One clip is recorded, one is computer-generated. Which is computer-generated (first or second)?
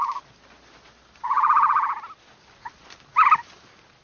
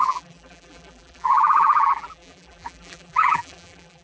second